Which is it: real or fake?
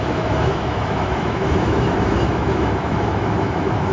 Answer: fake